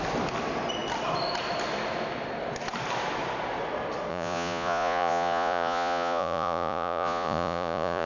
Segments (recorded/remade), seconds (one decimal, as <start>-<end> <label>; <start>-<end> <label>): 0.0-4.1 recorded; 4.1-8.1 remade